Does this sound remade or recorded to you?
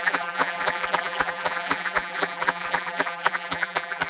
remade